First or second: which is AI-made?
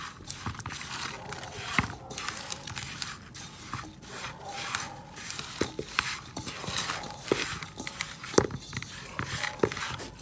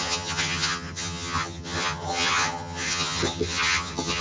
second